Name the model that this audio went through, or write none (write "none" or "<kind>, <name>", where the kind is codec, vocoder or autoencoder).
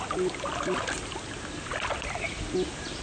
none